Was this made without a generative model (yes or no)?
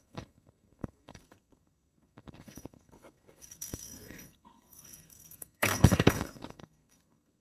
no